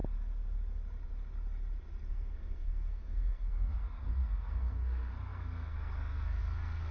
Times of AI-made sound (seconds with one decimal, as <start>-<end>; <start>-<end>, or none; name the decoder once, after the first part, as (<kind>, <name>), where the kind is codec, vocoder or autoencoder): 2.1-6.9 (codec, SNAC)